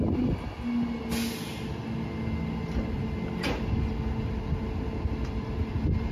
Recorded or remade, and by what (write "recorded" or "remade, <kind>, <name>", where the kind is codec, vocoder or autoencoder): recorded